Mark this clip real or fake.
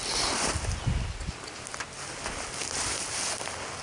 real